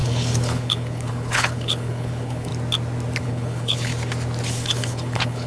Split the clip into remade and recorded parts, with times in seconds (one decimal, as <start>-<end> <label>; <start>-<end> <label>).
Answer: 0.0-2.5 remade; 2.5-3.2 recorded; 3.2-3.9 remade; 3.9-4.5 recorded; 4.5-5.5 remade